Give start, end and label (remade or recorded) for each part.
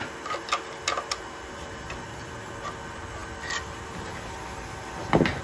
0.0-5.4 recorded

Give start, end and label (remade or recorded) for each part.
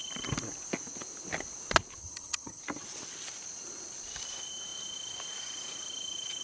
0.0-2.0 recorded; 2.0-2.6 remade; 2.6-6.4 recorded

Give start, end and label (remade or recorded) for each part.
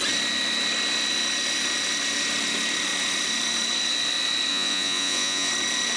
0.0-4.5 recorded; 4.5-5.5 remade; 5.5-6.0 recorded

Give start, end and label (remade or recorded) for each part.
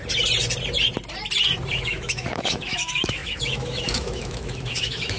0.0-1.7 recorded; 1.7-5.2 remade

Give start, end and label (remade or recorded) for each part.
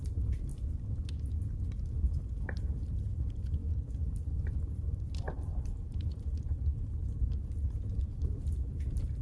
0.0-0.5 remade; 0.5-1.6 recorded; 1.6-3.6 remade; 3.6-4.6 recorded; 4.6-6.7 remade; 6.7-8.0 recorded; 8.0-9.2 remade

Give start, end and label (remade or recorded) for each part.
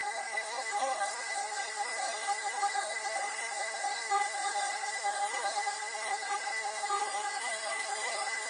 0.0-8.5 remade